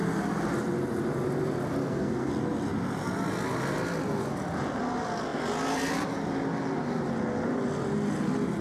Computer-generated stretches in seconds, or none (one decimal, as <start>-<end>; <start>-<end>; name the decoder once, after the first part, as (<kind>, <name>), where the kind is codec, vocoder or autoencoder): 1.8-2.3 (codec, SNAC)